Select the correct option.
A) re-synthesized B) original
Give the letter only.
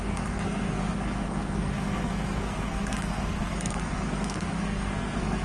A